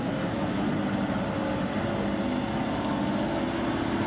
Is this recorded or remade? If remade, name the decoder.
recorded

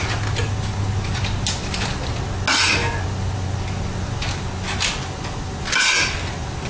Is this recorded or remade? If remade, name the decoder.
recorded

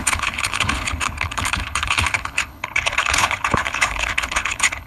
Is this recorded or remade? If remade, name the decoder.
remade, codec, HILCodec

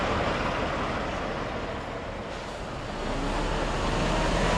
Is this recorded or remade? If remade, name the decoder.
recorded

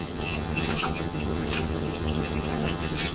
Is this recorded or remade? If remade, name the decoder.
remade, vocoder, HiFi-GAN